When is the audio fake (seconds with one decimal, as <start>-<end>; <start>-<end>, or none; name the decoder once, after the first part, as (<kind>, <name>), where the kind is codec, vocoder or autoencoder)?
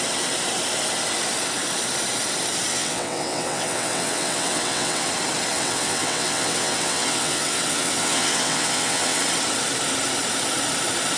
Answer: 2.7-5.1 (vocoder, WaveNeXt); 5.5-9.2